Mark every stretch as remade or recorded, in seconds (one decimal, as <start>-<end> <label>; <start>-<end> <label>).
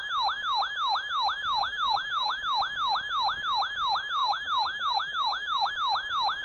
0.0-1.6 recorded; 1.6-2.4 remade; 2.4-4.2 recorded; 4.2-5.7 remade; 5.7-6.4 recorded